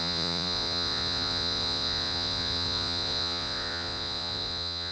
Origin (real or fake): fake